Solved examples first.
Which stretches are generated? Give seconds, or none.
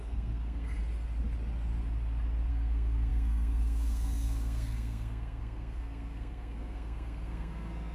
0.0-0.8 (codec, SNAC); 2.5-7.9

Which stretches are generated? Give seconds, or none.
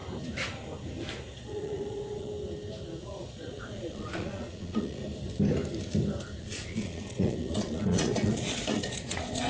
1.2-2.3 (vocoder, Vocos); 3.0-5.0; 6.4-9.5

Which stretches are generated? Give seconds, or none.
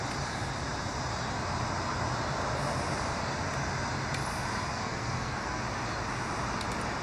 4.7-5.6 (codec, SNAC)